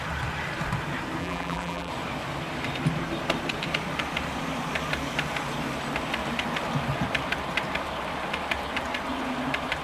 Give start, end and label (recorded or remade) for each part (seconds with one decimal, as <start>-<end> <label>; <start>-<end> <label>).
0.0-1.2 recorded; 1.2-1.9 remade; 1.9-9.8 recorded